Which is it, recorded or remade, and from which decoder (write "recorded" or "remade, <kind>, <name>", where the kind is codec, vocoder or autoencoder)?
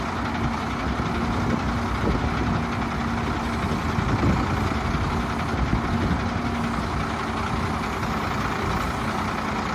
recorded